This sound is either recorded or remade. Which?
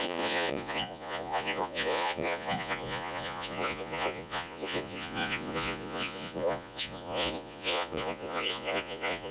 remade